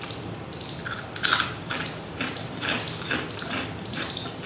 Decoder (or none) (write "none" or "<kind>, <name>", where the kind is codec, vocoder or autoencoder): none